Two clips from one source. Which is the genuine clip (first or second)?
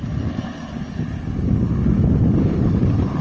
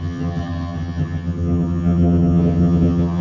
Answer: first